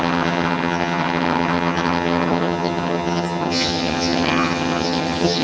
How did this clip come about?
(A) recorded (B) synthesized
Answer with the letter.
B